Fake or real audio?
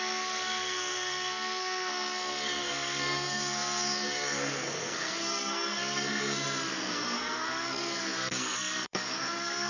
fake